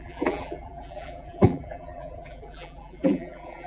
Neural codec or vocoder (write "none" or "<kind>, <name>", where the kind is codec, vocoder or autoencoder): vocoder, BigVGAN v2